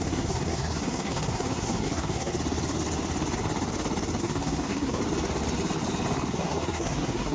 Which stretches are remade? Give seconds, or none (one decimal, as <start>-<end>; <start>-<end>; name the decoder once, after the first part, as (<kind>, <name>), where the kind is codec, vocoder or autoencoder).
0.0-2.3 (codec, SNAC); 4.2-5.0; 6.3-7.3